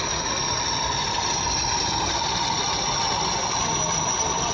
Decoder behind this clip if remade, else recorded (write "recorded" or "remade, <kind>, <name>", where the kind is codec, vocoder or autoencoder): recorded